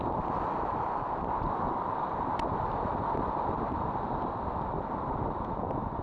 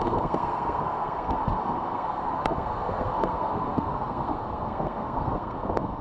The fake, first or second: second